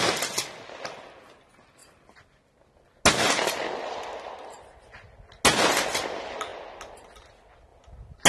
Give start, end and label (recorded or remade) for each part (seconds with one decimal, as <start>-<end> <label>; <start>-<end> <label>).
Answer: 0.0-8.3 recorded